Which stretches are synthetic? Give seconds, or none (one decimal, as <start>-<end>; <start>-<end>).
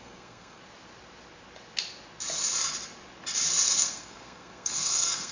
0.0-0.6; 3.8-5.3